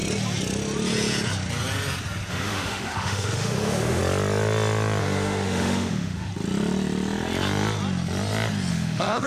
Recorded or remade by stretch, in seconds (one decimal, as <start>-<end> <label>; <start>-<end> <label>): 0.0-2.3 recorded; 2.3-4.0 remade; 4.0-5.0 recorded; 5.0-6.3 remade; 6.3-8.7 recorded; 8.7-9.3 remade